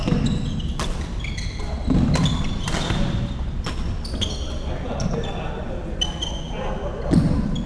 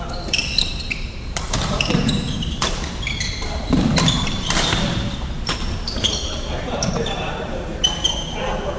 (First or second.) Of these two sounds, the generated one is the second